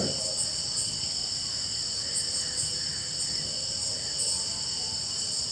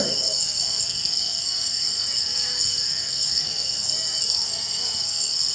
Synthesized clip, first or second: second